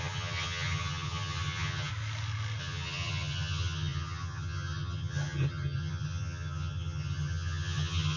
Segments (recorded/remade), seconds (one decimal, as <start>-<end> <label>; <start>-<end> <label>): 0.0-1.9 remade; 1.9-2.6 recorded; 2.6-8.2 remade